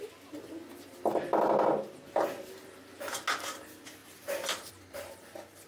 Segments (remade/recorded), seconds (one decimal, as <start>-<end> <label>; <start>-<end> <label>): 0.0-1.1 recorded; 1.1-3.1 remade; 3.1-4.0 recorded; 4.0-4.7 remade; 4.7-5.7 recorded